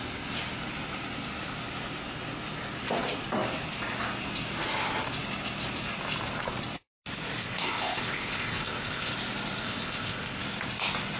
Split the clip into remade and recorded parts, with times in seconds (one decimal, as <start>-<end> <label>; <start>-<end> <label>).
0.0-7.4 recorded; 7.4-9.1 remade; 9.1-9.6 recorded; 9.6-10.4 remade; 10.4-11.2 recorded